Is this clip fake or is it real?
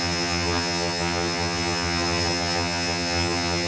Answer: fake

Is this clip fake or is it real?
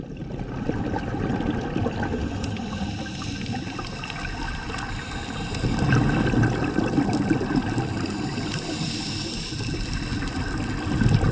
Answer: real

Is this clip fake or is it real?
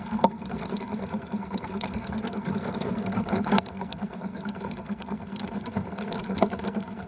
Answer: fake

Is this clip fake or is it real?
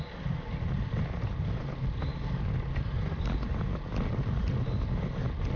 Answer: real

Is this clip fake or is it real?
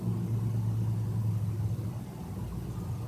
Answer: real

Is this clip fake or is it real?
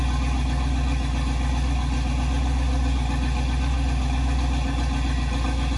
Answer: real